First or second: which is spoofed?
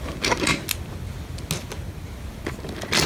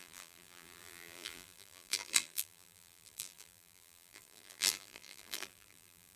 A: second